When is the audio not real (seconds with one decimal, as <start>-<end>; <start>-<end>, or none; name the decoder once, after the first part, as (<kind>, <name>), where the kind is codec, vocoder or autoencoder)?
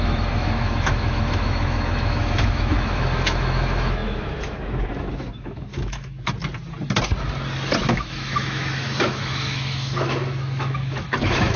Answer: 0.0-6.4 (autoencoder, DAC-VAE); 7.8-11.6